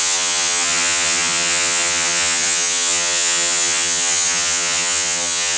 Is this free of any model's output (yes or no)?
no